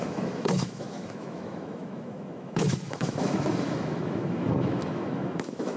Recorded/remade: remade